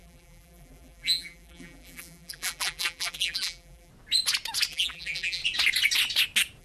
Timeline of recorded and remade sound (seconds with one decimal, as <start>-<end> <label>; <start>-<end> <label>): 0.0-3.9 remade; 3.9-4.7 recorded; 4.7-5.4 remade; 5.4-6.6 recorded